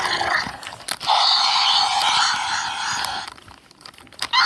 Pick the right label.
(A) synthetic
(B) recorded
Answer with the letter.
B